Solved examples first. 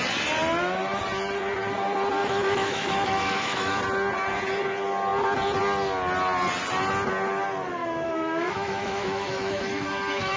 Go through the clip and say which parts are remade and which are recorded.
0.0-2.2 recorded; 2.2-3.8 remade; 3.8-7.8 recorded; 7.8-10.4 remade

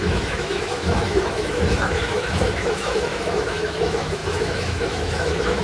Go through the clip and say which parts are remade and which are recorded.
0.0-5.6 remade

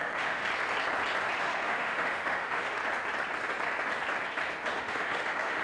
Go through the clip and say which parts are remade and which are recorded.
0.0-0.4 remade; 0.4-1.4 recorded; 1.4-2.8 remade; 2.8-4.8 recorded; 4.8-5.6 remade

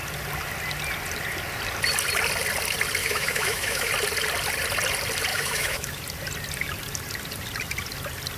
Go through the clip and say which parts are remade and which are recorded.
0.0-3.0 recorded; 3.0-3.9 remade; 3.9-5.3 recorded; 5.3-6.0 remade; 6.0-8.4 recorded

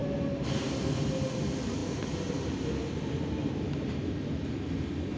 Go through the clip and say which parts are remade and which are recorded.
0.0-5.2 recorded

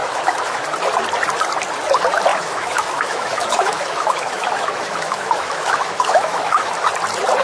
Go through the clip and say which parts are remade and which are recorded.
0.0-0.6 remade; 0.6-2.3 recorded; 2.3-6.7 remade; 6.7-7.4 recorded